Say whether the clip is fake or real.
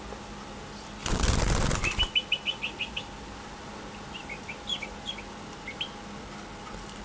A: real